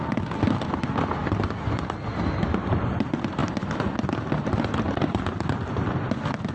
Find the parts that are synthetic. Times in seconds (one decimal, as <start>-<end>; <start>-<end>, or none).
none